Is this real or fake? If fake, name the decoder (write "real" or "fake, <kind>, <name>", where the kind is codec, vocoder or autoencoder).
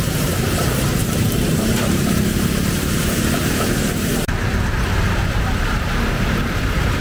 fake, vocoder, BigVGAN v2